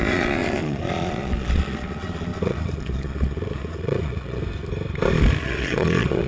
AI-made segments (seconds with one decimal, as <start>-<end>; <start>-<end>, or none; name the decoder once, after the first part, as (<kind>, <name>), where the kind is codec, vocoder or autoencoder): 0.0-4.4 (vocoder, Vocos); 5.4-6.3